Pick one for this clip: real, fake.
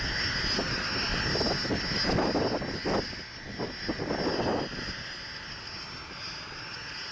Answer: real